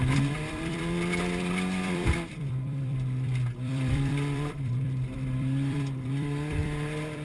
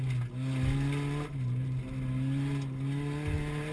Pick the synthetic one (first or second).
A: first